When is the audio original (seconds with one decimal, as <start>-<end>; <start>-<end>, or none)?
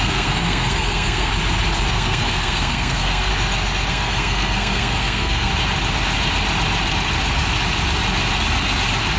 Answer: 1.3-1.9; 3.3-3.9; 5.5-9.2